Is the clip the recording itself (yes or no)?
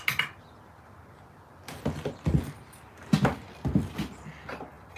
yes